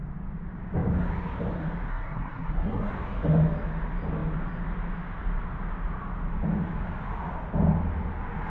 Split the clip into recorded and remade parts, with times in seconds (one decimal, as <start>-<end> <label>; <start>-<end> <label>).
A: 0.0-1.9 recorded; 1.9-2.9 remade; 2.9-8.5 recorded